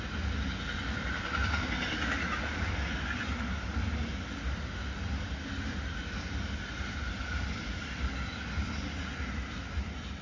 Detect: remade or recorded recorded